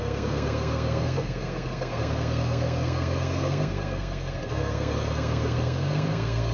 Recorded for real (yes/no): no